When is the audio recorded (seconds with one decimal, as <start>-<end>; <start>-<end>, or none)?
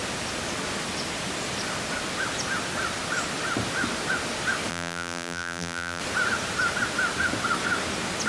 0.0-4.7; 6.0-8.3